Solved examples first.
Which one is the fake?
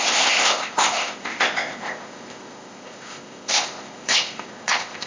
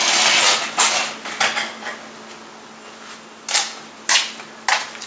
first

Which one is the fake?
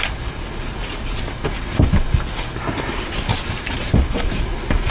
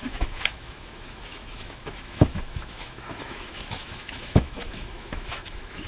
second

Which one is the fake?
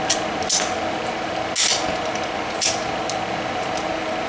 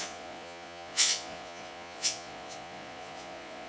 second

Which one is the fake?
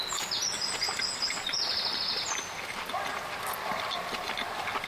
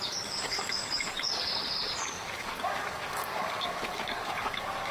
second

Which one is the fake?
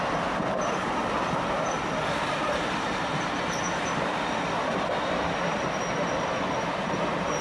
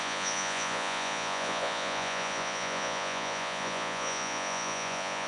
second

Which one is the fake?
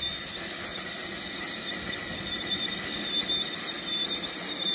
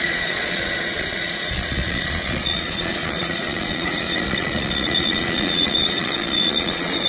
second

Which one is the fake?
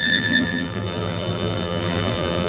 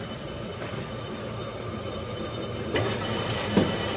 first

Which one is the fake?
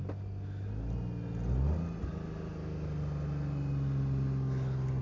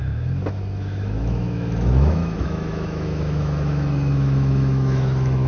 second